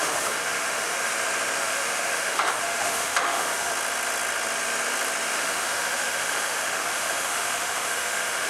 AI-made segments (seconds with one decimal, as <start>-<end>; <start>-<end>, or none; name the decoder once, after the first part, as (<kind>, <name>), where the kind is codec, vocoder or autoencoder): 0.0-1.1 (autoencoder, DAC-VAE); 1.6-3.7; 5.3-8.5